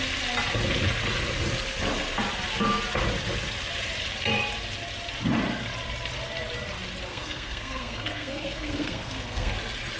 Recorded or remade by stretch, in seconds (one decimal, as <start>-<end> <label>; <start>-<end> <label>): 0.0-7.1 recorded; 7.1-9.5 remade; 9.5-10.0 recorded